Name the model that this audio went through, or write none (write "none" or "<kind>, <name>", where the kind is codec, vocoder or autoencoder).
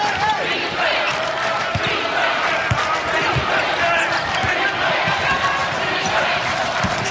none